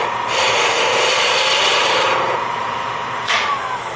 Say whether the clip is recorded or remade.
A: remade